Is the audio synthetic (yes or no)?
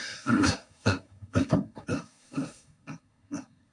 yes